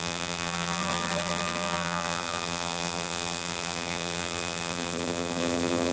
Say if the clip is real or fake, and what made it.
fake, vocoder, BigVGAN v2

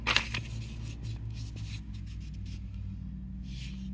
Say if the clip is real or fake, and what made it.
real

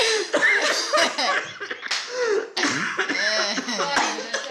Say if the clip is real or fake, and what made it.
real